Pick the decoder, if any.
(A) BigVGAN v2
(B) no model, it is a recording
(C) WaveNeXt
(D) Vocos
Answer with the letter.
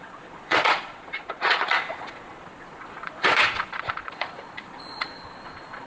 D